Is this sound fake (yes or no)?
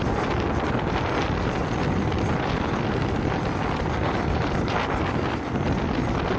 no